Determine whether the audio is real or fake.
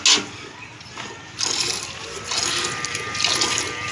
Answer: real